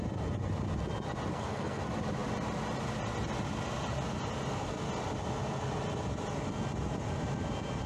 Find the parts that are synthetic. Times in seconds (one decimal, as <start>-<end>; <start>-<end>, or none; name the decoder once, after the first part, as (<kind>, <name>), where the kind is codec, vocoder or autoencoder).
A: 1.3-1.8 (codec, SNAC)